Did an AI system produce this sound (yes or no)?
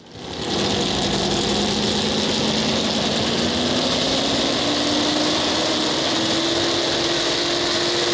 no